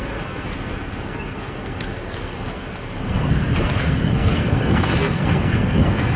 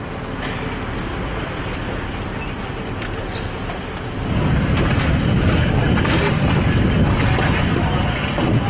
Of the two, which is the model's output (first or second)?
first